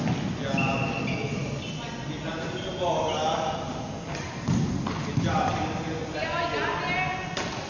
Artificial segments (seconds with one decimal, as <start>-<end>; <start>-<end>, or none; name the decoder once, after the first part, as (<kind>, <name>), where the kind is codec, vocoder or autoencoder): none